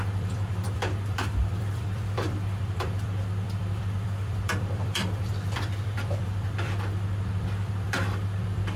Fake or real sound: fake